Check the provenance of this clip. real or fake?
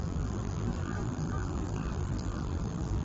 fake